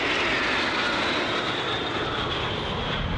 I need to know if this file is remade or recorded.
recorded